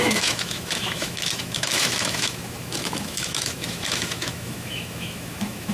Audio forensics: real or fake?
fake